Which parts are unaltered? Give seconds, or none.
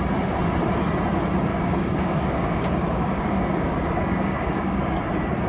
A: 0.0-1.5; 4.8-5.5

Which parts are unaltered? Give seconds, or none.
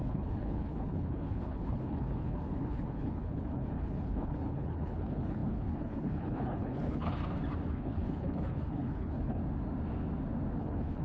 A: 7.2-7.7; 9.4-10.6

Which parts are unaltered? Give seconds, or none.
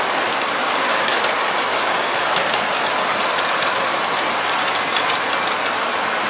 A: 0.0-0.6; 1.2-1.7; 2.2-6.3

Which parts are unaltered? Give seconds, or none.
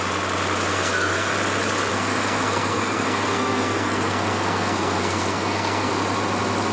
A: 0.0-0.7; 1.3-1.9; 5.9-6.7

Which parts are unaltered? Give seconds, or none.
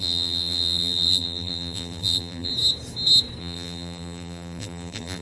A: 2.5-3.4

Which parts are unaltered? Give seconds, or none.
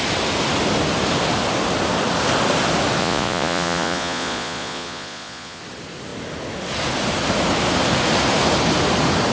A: 0.0-3.0; 5.6-9.3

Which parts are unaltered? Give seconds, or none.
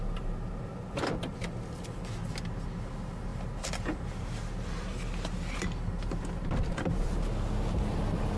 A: 0.0-8.4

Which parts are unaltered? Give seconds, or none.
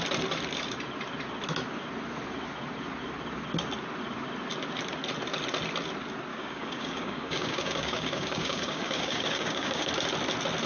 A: 0.0-6.3; 9.9-10.7